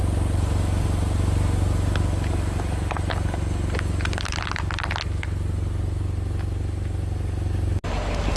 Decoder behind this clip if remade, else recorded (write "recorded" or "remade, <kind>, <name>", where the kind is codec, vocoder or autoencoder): recorded